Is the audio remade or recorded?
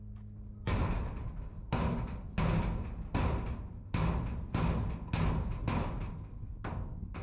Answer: recorded